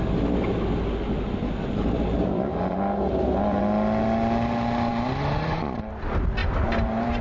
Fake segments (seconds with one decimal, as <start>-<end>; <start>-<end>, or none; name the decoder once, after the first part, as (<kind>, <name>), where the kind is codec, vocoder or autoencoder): 6.4-7.2 (vocoder, BigVGAN v2)